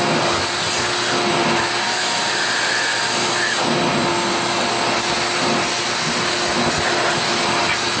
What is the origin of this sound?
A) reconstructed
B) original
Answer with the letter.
B